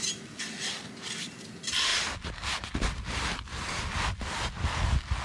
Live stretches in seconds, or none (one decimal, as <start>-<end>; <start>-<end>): 0.0-5.2